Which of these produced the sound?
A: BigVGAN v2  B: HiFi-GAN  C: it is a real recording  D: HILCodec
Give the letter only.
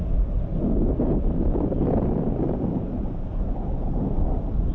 C